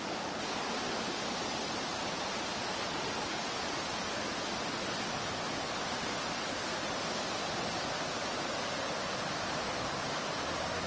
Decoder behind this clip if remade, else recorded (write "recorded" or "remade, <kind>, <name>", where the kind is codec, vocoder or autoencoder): remade, vocoder, BigVGAN v2